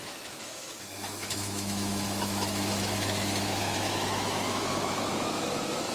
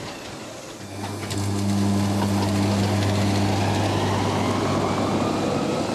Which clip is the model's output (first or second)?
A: first